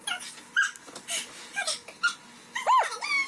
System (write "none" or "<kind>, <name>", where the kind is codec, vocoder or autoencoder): none